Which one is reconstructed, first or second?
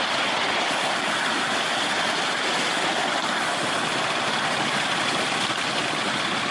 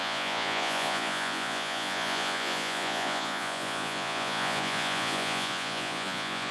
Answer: second